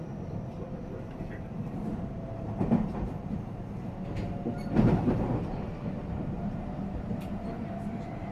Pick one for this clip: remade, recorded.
remade